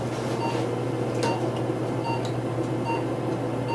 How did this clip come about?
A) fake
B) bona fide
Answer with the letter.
B